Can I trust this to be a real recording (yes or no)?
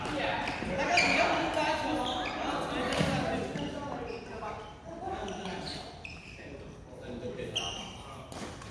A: yes